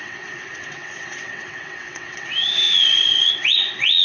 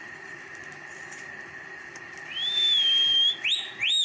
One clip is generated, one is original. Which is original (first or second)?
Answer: second